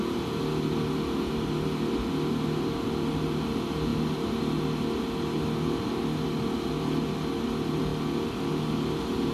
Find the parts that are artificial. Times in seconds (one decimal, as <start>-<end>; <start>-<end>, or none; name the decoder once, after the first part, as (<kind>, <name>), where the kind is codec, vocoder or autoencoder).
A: none